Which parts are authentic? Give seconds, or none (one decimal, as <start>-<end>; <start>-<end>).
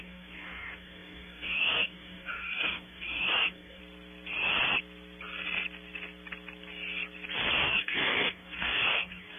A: 3.8-7.5